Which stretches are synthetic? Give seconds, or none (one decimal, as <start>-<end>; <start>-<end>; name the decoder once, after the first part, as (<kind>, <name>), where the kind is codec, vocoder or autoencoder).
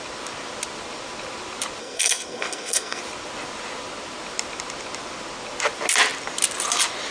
1.8-3.0 (codec, SNAC)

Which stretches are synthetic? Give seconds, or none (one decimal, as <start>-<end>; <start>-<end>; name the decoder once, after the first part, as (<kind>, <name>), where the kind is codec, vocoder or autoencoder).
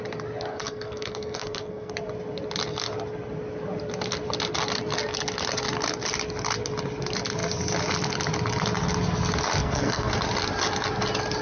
0.5-1.9 (codec, SNAC); 9.6-10.1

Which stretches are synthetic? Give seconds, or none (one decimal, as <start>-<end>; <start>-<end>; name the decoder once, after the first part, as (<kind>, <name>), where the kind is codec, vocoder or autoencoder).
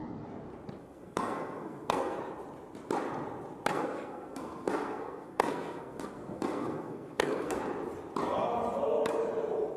0.8-2.2 (codec, SNAC); 3.7-7.6